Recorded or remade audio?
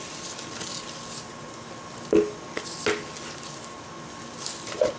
recorded